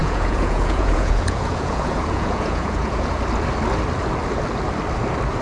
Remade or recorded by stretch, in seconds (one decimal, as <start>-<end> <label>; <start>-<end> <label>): 0.0-3.2 remade; 3.2-5.4 recorded